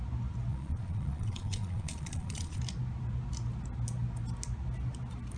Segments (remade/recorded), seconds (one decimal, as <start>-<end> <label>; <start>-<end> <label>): 0.0-0.5 recorded; 0.5-2.6 remade; 2.6-5.4 recorded